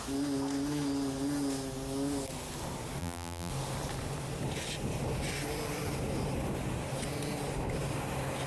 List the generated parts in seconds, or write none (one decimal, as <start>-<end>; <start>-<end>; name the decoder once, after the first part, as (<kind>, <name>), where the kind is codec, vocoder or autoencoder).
3.0-3.5 (vocoder, BigVGAN v2)

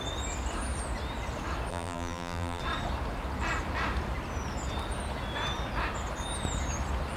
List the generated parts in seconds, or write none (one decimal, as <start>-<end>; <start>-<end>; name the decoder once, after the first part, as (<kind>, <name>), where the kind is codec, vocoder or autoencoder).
1.7-2.6 (vocoder, BigVGAN v2)

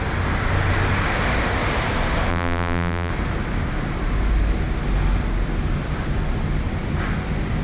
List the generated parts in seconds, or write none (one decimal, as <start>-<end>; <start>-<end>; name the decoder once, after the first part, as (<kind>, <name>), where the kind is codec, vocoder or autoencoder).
2.3-3.1 (vocoder, BigVGAN v2)

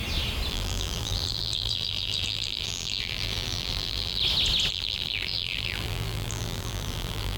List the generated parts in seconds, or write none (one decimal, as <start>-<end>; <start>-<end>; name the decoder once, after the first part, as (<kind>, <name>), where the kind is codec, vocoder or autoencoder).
0.5-4.2 (vocoder, BigVGAN v2); 4.7-7.4

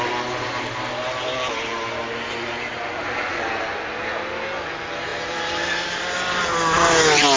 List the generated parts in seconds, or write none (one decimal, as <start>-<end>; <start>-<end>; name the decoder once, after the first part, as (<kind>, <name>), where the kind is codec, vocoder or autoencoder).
none

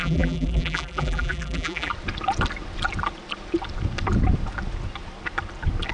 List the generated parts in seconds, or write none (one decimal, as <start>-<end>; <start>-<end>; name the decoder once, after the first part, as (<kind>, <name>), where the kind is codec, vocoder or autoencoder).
0.0-1.9 (vocoder, BigVGAN v2)